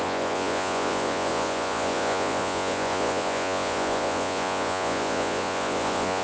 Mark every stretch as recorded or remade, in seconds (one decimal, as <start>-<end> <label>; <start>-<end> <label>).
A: 0.0-6.2 remade